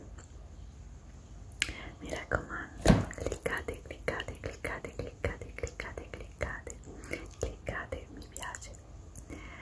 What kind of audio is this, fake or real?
real